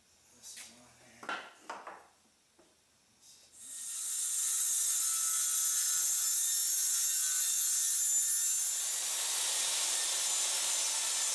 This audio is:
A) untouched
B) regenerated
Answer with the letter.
A